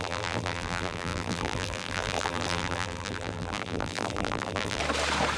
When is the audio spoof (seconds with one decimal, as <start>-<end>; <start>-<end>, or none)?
0.0-4.8